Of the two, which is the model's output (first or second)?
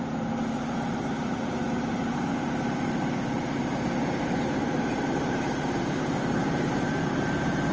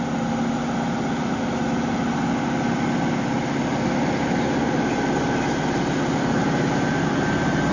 first